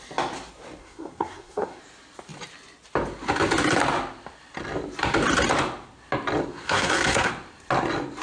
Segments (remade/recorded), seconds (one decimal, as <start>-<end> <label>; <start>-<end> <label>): 0.0-0.8 recorded; 0.8-1.8 remade; 1.8-6.5 recorded; 6.5-7.3 remade; 7.3-8.2 recorded